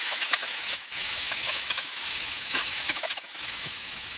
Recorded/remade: remade